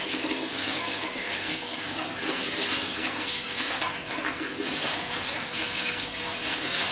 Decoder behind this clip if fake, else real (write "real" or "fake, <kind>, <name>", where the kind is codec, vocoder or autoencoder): fake, codec, SNAC